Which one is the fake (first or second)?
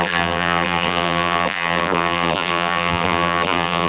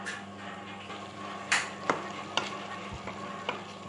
first